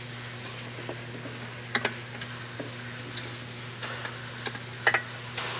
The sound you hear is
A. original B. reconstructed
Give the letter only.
A